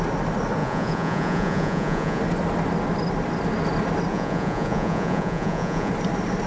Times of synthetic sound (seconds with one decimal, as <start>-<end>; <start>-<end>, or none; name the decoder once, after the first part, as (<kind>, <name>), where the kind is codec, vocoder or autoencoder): 0.6-2.2 (vocoder, Vocos); 4.1-5.9